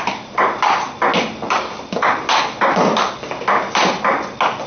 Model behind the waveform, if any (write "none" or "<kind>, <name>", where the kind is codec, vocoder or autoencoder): none